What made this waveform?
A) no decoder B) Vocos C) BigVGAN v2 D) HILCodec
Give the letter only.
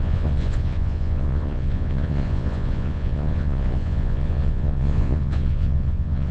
B